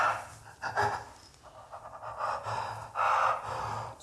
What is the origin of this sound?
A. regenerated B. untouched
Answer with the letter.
B